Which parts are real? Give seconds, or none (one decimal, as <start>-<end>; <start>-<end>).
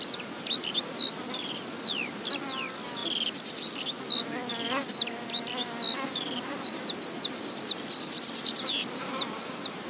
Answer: 0.0-9.9